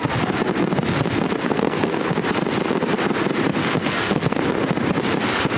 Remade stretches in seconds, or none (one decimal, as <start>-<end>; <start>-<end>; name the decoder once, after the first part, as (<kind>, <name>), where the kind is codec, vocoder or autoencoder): 1.4-2.1 (codec, SNAC); 3.8-4.4